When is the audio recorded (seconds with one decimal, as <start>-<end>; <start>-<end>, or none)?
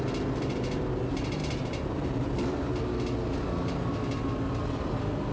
0.0-5.3